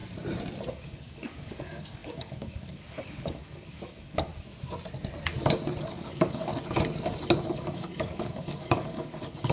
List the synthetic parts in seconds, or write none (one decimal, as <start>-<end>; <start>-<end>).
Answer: 0.7-4.3; 5.9-6.5; 7.5-9.5